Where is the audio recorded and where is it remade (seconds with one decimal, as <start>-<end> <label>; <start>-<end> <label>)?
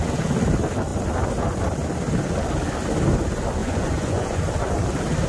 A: 0.0-3.6 recorded; 3.6-4.4 remade; 4.4-5.3 recorded